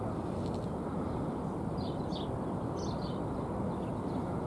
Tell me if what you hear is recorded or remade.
recorded